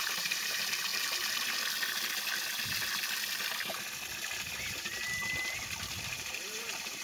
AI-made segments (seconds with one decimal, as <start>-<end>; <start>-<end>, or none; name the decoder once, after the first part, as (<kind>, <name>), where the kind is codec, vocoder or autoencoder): 0.0-0.9 (vocoder, BigVGAN v2); 4.4-5.2; 5.9-7.0